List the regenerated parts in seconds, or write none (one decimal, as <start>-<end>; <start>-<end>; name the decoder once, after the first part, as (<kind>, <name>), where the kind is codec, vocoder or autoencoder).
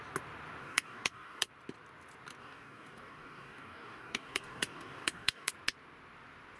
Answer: 0.6-1.5 (codec, DAC); 2.4-5.5